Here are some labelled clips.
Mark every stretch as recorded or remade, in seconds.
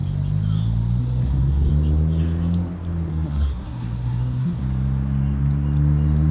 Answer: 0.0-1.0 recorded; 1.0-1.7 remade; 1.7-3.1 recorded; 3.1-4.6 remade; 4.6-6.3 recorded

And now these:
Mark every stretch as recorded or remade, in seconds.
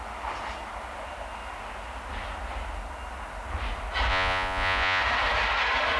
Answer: 0.0-4.1 recorded; 4.1-5.0 remade; 5.0-6.0 recorded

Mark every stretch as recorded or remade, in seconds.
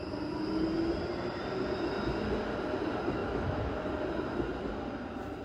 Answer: 0.0-3.2 recorded; 3.2-3.7 remade; 3.7-5.4 recorded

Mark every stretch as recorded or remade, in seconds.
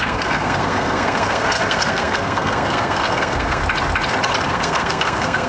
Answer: 0.0-3.6 remade; 3.6-4.5 recorded; 4.5-5.5 remade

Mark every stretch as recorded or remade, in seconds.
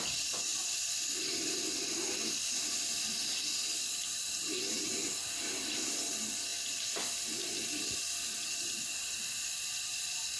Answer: 0.0-10.4 recorded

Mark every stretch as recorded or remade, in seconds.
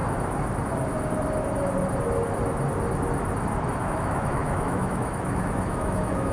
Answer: 0.0-3.8 recorded; 3.8-6.3 remade